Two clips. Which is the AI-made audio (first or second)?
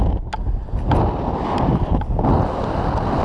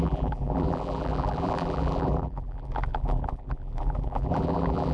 second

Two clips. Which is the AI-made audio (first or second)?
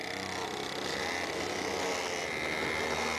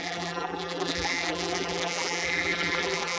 second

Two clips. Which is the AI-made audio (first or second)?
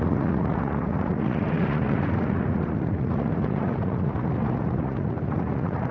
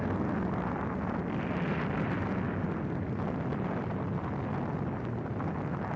first